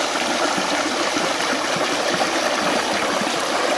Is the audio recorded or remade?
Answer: recorded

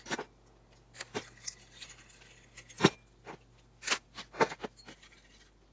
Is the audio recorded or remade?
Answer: recorded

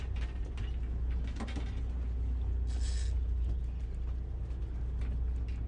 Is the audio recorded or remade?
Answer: recorded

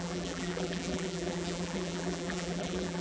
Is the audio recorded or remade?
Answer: remade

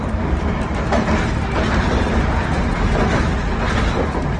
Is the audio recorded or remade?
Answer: recorded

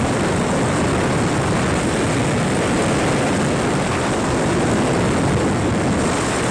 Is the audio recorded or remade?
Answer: recorded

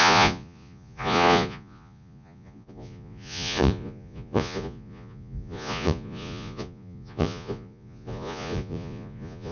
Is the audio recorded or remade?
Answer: remade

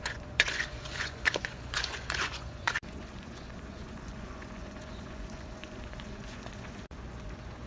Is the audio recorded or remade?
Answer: remade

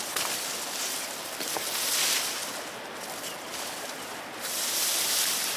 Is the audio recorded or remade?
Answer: recorded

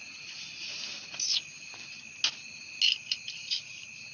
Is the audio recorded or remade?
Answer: recorded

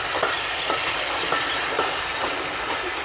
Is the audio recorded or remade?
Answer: recorded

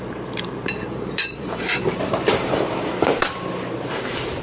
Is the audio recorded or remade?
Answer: remade